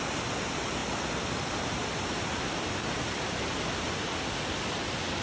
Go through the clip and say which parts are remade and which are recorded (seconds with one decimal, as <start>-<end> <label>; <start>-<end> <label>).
0.0-5.2 recorded